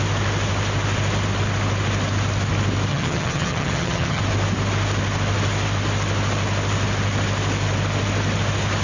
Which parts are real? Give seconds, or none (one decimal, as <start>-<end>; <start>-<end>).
0.0-2.9; 4.2-8.8